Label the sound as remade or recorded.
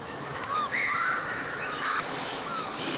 remade